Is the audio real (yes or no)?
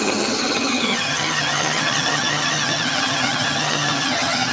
no